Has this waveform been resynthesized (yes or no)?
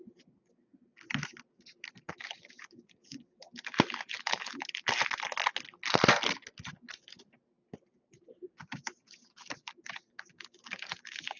no